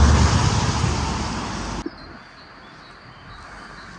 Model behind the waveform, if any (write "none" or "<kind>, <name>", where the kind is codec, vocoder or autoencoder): none